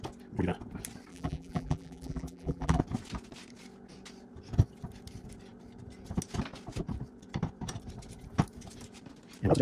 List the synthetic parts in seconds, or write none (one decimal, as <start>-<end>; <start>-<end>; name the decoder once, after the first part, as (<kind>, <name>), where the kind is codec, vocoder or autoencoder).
1.1-2.8 (vocoder, BigVGAN v2)